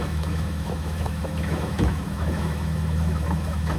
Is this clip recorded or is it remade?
remade